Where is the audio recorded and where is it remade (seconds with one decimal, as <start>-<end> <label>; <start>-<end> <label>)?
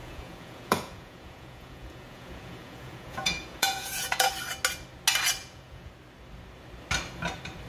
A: 0.0-4.3 remade; 4.3-5.4 recorded; 5.4-5.9 remade; 5.9-7.7 recorded